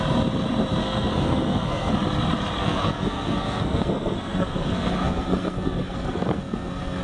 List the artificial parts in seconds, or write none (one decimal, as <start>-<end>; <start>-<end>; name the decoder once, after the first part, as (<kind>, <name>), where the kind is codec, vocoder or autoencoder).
0.8-1.9 (codec, SNAC); 2.6-7.0